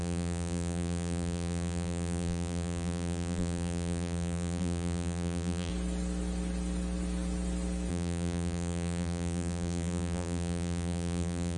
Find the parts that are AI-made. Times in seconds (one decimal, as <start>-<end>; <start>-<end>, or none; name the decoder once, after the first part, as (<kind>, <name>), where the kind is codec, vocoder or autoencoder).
0.0-5.7 (vocoder, BigVGAN v2); 7.9-11.6